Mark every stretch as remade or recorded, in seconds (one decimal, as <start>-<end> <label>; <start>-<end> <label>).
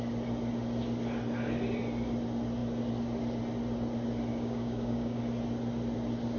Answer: 0.0-4.3 recorded; 4.3-5.2 remade; 5.2-6.4 recorded